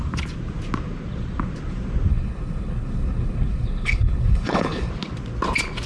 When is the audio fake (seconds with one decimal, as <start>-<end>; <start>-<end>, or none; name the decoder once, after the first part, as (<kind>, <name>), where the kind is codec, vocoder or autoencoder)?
2.1-4.9 (codec, HILCodec)